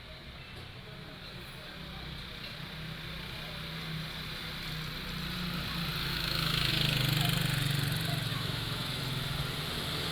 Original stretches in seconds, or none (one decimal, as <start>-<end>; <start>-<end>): 0.0-6.1; 6.7-8.3; 9.0-10.1